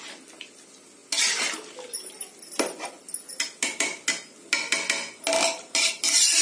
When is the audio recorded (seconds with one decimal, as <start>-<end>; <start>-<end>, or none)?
0.0-6.4